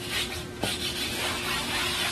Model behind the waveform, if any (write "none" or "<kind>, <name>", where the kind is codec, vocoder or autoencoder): none